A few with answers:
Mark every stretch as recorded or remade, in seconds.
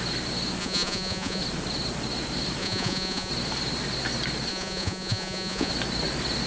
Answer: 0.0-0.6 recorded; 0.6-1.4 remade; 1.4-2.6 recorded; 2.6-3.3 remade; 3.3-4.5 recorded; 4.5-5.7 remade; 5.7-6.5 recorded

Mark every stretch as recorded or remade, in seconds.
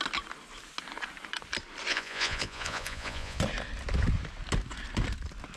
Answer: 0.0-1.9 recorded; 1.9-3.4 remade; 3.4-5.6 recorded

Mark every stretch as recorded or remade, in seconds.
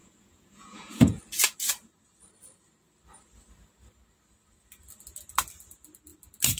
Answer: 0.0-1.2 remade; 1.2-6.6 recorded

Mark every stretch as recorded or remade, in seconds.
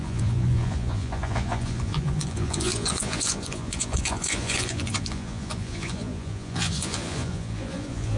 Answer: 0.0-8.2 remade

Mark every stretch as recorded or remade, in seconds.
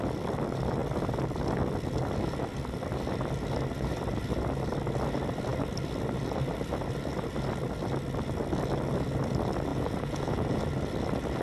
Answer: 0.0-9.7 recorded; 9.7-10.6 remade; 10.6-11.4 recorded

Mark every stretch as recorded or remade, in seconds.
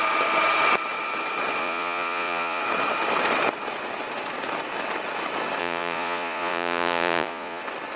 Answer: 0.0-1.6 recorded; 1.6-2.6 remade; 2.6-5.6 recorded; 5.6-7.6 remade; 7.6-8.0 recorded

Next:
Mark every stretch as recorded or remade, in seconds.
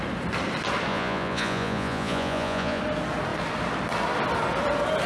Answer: 0.0-0.9 recorded; 0.9-2.8 remade; 2.8-5.1 recorded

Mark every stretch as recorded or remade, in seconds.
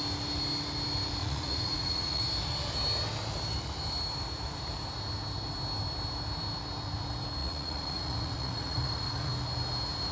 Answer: 0.0-1.2 recorded; 1.2-2.2 remade; 2.2-7.4 recorded; 7.4-9.3 remade; 9.3-10.1 recorded